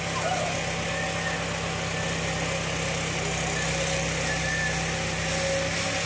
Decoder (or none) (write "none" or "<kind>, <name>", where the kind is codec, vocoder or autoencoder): none